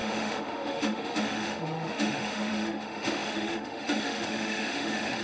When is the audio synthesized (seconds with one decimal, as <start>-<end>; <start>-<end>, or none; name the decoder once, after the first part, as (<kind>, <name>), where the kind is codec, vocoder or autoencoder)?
0.0-5.2 (autoencoder, DAC-VAE)